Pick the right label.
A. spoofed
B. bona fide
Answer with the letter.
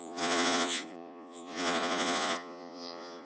A